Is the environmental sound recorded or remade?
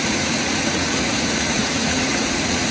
remade